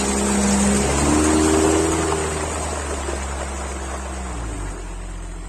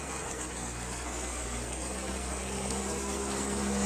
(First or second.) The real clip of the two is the first